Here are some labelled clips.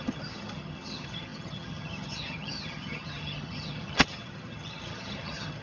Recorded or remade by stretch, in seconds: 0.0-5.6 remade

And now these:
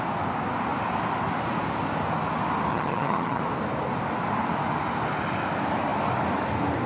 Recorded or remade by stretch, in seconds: 0.0-2.7 recorded; 2.7-3.4 remade; 3.4-6.9 recorded